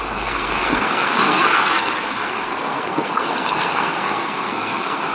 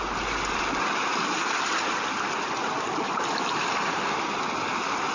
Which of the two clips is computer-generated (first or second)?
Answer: first